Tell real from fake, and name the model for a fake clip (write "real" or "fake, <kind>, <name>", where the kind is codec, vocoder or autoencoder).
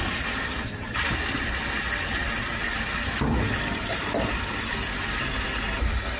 real